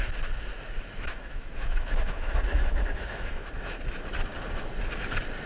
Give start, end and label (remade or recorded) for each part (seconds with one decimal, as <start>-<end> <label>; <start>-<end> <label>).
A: 0.0-0.5 recorded; 0.5-3.8 remade; 3.8-5.5 recorded